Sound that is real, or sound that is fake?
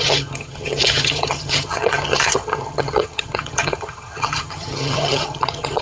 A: fake